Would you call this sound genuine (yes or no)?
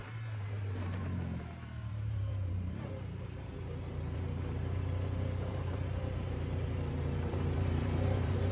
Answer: no